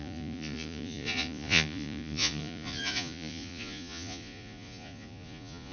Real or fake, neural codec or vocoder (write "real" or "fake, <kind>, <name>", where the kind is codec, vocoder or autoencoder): fake, vocoder, Vocos